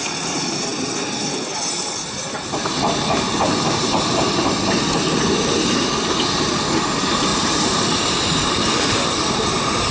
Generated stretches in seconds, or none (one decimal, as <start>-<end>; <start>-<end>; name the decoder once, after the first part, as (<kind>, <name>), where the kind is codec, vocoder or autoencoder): 7.3-9.9 (vocoder, BigVGAN v2)

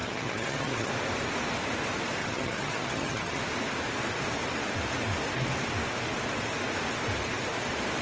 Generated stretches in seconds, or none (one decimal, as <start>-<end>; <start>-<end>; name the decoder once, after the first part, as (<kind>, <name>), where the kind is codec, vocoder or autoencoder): 0.0-0.9 (vocoder, HiFi-GAN); 2.2-3.4

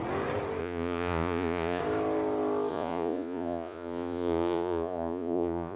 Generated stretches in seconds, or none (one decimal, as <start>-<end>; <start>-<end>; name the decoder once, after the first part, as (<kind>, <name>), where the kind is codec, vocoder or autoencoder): 0.6-1.8 (vocoder, Vocos); 2.7-5.8

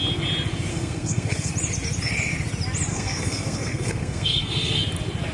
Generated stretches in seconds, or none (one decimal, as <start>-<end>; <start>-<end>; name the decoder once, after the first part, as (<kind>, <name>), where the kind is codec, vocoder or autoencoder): 0.7-1.5 (codec, SNAC); 2.9-4.8

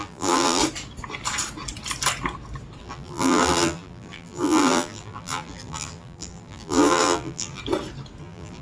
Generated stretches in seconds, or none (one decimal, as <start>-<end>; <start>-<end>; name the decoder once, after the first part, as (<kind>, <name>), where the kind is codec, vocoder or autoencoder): 0.0-0.6 (vocoder, BigVGAN v2); 2.8-7.6; 8.2-8.6

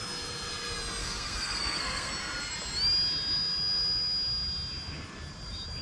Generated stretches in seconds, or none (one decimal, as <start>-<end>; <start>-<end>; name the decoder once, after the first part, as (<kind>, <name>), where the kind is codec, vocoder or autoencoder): 1.0-2.1 (codec, SNAC)